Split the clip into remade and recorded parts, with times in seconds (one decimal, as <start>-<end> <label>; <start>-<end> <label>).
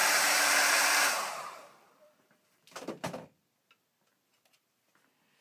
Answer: 0.0-2.9 remade; 2.9-5.4 recorded